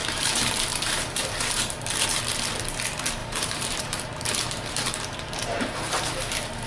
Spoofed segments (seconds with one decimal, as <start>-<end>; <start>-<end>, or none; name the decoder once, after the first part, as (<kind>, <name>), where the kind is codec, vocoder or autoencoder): 0.0-2.2 (vocoder, BigVGAN v2); 3.2-6.3

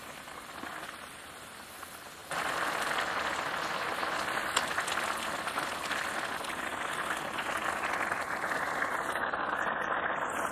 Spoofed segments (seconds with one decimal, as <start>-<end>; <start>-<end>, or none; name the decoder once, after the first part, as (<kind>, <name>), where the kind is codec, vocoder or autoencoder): 0.0-10.5 (vocoder, BigVGAN v2)